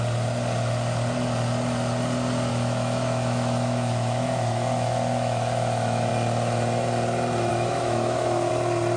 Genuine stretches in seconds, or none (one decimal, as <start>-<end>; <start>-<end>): 0.0-2.5; 6.1-7.5; 8.5-9.0